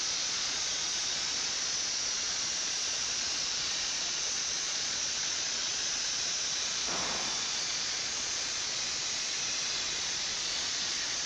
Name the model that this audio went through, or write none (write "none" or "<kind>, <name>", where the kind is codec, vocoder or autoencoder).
vocoder, Vocos